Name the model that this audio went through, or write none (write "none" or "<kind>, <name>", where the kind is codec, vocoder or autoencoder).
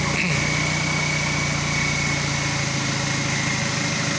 none